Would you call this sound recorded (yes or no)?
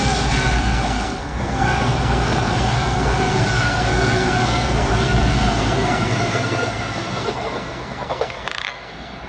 no